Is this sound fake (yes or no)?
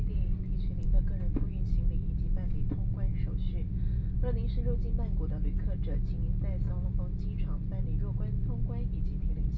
no